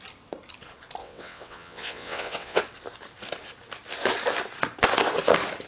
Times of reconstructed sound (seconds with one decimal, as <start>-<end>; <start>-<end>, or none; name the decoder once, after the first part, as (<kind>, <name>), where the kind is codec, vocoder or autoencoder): 1.0-2.6 (vocoder, WaveNeXt)